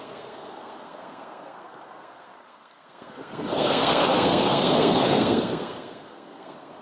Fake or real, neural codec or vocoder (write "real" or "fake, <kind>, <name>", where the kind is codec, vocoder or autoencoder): fake, codec, SNAC